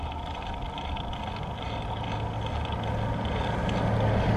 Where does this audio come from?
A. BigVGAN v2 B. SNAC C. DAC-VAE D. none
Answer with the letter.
D